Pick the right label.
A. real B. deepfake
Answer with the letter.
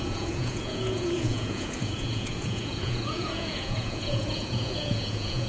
B